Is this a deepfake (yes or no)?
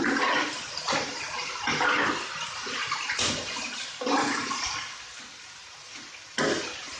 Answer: no